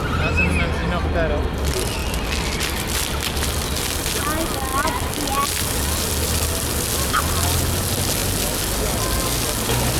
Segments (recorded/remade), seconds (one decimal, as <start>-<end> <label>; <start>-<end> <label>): 0.0-10.0 recorded